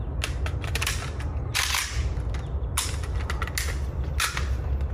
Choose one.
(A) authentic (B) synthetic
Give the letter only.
A